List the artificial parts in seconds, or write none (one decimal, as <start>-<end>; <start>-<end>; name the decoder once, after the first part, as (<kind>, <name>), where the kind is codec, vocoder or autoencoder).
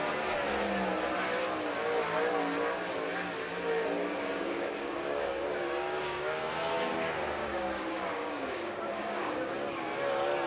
4.0-6.4 (codec, DAC); 7.4-9.5